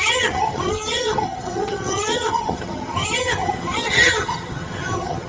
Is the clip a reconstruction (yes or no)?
yes